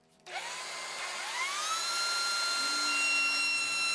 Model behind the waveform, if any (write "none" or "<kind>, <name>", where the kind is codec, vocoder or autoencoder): none